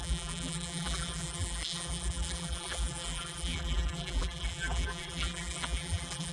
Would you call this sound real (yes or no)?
no